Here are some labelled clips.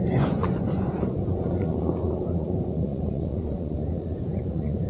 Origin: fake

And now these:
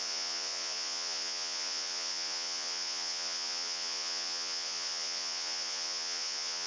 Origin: fake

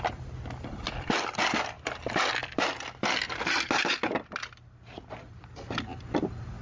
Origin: real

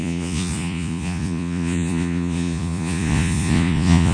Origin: fake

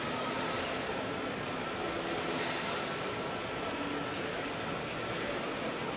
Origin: real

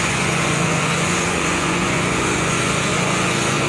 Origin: fake